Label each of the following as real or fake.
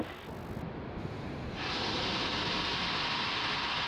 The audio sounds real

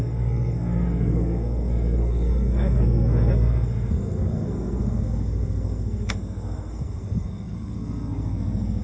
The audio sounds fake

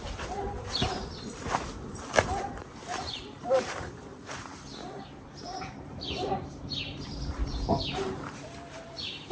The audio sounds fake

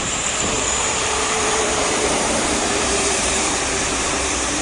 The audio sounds fake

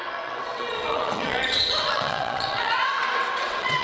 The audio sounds fake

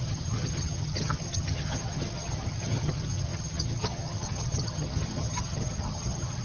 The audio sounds fake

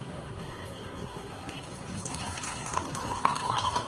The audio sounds fake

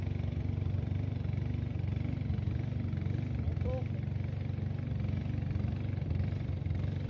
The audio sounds real